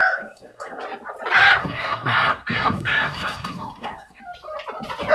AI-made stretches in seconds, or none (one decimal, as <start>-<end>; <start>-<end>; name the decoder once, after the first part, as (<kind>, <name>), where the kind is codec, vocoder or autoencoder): 0.0-0.8 (codec, SNAC); 1.6-4.2